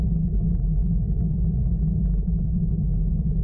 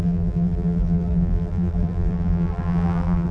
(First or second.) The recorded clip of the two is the first